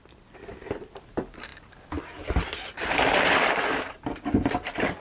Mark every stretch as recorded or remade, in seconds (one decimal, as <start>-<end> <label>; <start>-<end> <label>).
0.0-5.0 recorded